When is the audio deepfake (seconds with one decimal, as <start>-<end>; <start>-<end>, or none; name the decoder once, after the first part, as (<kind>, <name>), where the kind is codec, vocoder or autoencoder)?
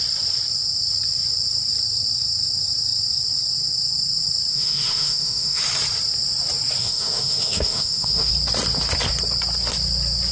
4.5-5.6 (autoencoder, DAC-VAE); 6.8-8.3